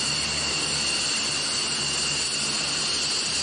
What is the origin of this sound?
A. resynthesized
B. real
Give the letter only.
B